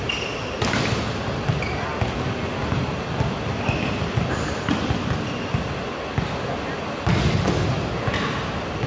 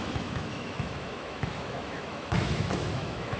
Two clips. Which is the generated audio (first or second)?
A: second